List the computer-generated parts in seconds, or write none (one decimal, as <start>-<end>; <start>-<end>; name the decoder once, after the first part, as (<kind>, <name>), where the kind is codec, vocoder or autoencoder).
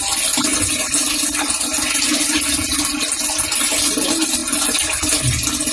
none